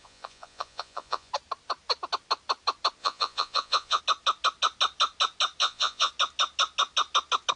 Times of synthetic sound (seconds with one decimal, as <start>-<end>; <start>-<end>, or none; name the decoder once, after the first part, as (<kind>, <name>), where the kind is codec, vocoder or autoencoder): 0.0-1.3 (vocoder, Vocos); 3.0-4.0; 5.6-6.1

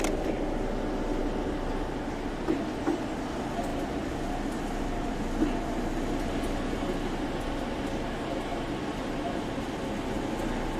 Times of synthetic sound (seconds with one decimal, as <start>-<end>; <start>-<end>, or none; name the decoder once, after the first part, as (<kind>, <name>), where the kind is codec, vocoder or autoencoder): 8.5-9.8 (vocoder, BigVGAN v2)

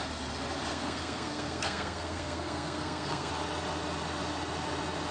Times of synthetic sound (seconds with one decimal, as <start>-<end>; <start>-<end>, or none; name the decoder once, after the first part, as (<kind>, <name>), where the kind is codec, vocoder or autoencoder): 0.7-3.3 (codec, SNAC)

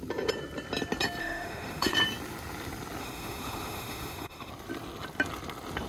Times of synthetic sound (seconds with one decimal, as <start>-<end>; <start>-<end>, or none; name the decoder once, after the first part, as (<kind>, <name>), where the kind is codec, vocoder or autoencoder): 1.2-2.0 (autoencoder, DAC-VAE); 3.0-4.5